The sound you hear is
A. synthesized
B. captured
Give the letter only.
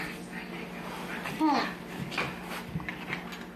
B